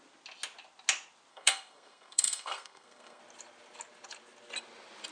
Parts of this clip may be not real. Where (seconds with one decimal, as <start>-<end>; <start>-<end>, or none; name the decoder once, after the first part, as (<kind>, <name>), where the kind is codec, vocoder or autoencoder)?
1.3-3.2 (codec, SNAC)